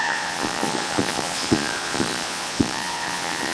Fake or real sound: fake